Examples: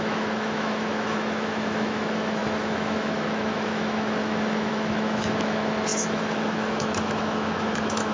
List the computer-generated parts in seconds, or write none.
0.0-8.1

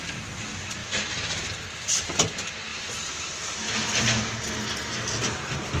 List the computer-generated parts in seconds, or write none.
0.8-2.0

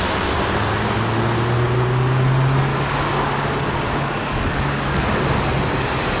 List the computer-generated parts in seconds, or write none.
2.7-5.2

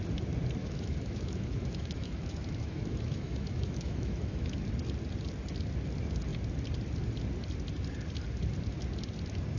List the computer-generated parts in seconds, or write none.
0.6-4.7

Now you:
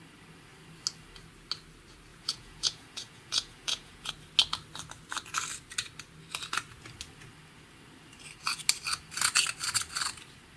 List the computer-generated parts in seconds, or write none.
2.1-4.1

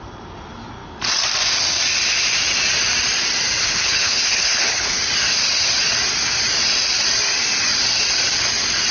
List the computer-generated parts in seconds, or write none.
3.6-5.0

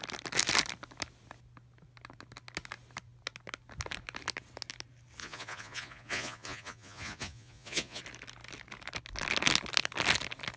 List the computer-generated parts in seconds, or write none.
5.2-8.0